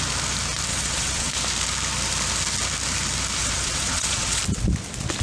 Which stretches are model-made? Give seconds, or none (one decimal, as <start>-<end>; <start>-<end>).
0.7-1.3; 3.4-4.4